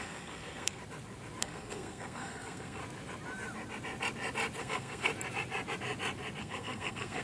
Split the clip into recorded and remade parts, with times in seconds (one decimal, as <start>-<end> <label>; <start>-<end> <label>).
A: 0.0-0.8 remade; 0.8-1.4 recorded; 1.4-2.8 remade; 2.8-4.6 recorded; 4.6-5.1 remade; 5.1-6.4 recorded; 6.4-7.2 remade